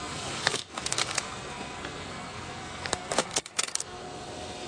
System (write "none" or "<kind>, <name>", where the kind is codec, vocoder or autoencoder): codec, SNAC